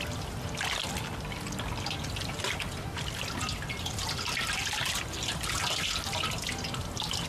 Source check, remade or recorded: recorded